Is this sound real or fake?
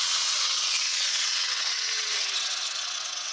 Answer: fake